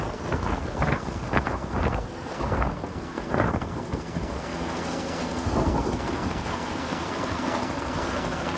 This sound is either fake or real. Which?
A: fake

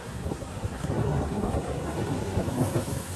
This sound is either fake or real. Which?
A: fake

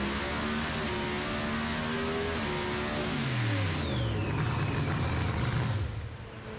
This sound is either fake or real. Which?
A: real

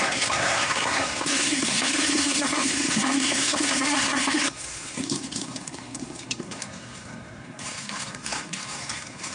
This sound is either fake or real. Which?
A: fake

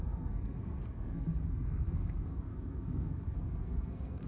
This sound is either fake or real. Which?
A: fake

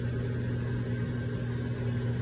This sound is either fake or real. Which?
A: real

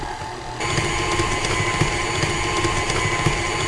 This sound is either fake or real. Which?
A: real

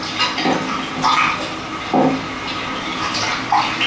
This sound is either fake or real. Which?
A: real